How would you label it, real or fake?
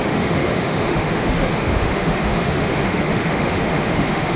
fake